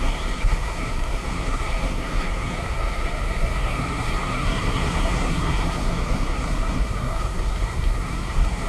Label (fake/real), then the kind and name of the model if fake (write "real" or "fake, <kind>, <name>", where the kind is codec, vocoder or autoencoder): fake, codec, SNAC